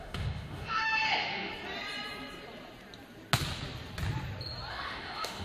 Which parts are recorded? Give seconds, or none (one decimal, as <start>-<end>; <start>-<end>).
1.5-4.7